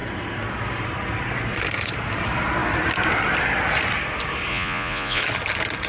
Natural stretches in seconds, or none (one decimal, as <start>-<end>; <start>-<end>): 0.0-4.5; 5.2-5.9